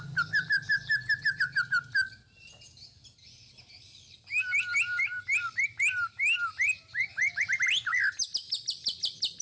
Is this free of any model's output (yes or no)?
yes